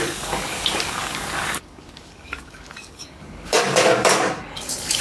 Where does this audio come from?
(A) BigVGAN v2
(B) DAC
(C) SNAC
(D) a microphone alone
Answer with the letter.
B